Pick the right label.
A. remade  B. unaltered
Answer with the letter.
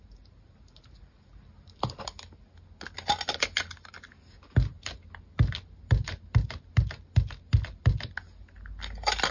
B